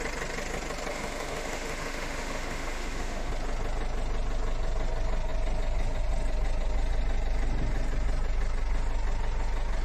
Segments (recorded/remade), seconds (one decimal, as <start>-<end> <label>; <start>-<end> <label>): 0.0-0.9 recorded; 0.9-3.3 remade; 3.3-9.8 recorded